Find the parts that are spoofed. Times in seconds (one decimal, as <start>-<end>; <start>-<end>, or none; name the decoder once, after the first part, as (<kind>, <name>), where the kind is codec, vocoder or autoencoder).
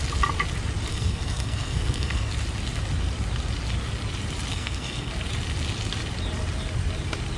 0.9-2.3 (codec, SNAC); 4.5-5.1